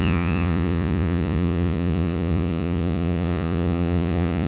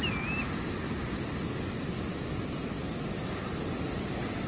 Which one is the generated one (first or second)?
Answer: first